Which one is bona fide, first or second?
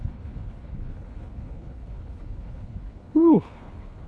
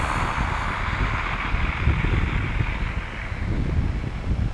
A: second